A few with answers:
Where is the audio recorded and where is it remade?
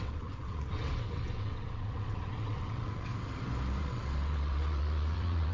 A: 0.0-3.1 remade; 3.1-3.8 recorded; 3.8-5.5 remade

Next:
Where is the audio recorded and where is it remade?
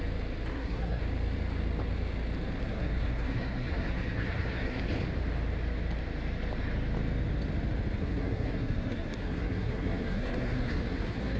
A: 0.0-0.5 recorded; 0.5-1.0 remade; 1.0-2.6 recorded; 2.6-4.8 remade; 4.8-8.0 recorded; 8.0-11.4 remade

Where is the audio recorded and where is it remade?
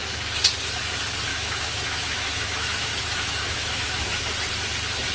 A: 0.0-1.3 recorded; 1.3-4.4 remade; 4.4-5.1 recorded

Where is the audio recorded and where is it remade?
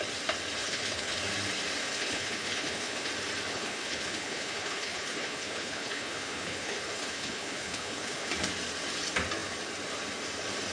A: 0.0-0.6 recorded; 0.6-1.2 remade; 1.2-1.8 recorded; 1.8-3.1 remade; 3.1-3.5 recorded; 3.5-8.3 remade; 8.3-10.7 recorded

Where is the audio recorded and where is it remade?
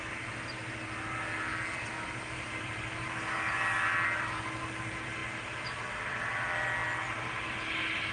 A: 0.0-8.1 recorded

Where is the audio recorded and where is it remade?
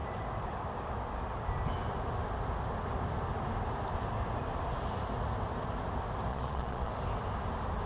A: 0.0-6.3 recorded; 6.3-6.9 remade; 6.9-7.9 recorded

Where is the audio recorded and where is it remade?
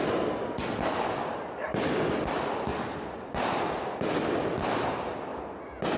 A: 0.0-2.7 recorded; 2.7-4.6 remade; 4.6-6.0 recorded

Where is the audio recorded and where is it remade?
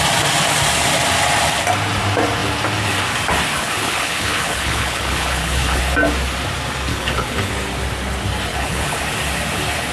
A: 0.0-3.5 recorded; 3.5-5.8 remade; 5.8-6.9 recorded; 6.9-7.5 remade; 7.5-8.5 recorded; 8.5-9.0 remade; 9.0-9.9 recorded